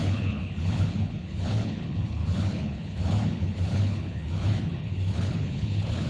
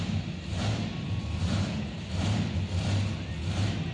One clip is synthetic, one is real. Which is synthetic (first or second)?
first